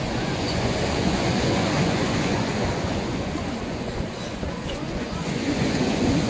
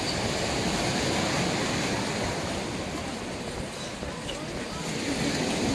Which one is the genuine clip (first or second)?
second